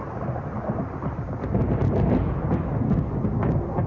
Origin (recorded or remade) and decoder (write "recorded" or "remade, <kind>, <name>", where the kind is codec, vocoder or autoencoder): recorded